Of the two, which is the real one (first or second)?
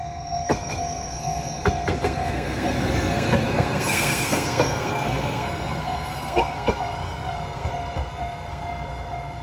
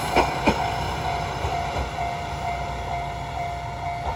second